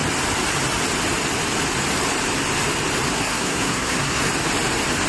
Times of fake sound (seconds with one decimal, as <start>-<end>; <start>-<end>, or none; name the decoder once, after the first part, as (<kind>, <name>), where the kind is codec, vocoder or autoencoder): 3.1-4.2 (codec, SNAC)